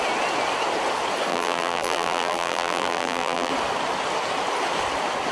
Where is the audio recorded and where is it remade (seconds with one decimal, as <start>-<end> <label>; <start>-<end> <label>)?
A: 0.0-1.3 recorded; 1.3-3.5 remade; 3.5-5.3 recorded